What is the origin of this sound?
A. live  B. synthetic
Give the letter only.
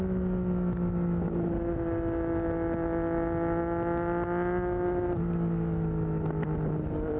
A